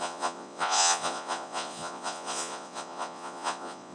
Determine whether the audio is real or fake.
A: fake